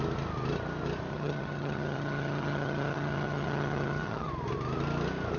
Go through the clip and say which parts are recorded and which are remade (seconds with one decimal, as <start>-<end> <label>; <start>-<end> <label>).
0.0-1.1 recorded; 1.1-4.3 remade; 4.3-5.4 recorded